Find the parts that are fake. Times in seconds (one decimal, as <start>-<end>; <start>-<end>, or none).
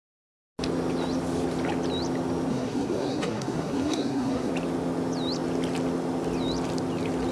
2.5-4.5